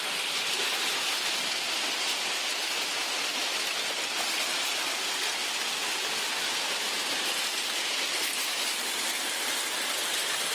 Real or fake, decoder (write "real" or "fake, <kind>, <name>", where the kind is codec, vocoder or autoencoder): real